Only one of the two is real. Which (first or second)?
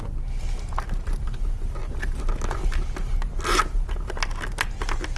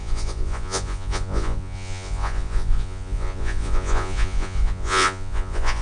first